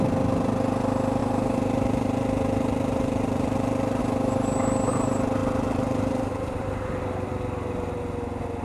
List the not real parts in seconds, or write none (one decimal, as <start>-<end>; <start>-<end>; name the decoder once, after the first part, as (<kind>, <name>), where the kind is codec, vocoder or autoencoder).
1.2-4.0 (vocoder, BigVGAN v2); 5.4-6.9